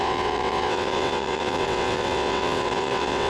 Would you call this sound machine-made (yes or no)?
yes